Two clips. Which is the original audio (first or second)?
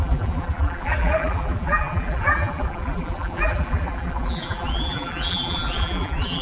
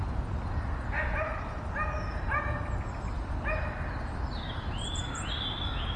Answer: second